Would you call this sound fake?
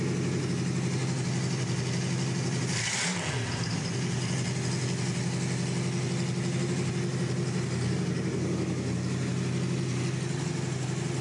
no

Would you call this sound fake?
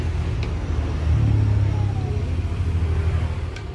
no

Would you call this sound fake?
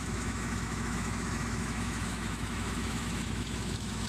yes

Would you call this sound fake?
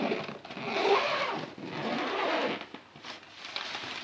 no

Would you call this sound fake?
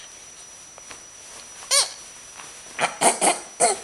yes